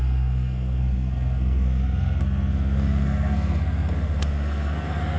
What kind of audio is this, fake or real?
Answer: fake